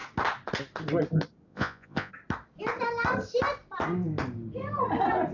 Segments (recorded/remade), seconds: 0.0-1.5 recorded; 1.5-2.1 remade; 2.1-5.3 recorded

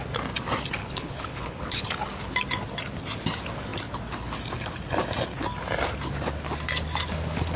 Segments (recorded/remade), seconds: 0.0-0.8 recorded; 0.8-1.9 remade; 1.9-7.6 recorded

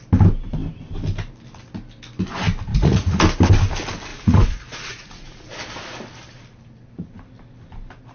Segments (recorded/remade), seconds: 0.0-2.7 recorded; 2.7-3.2 remade; 3.2-4.1 recorded; 4.1-5.6 remade; 5.6-8.1 recorded